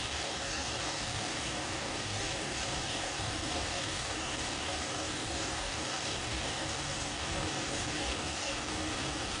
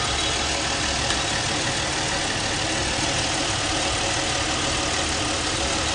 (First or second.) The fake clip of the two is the first